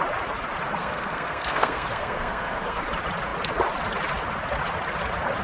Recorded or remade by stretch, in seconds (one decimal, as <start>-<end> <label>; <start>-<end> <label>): 0.0-0.8 recorded; 0.8-2.8 remade; 2.8-5.4 recorded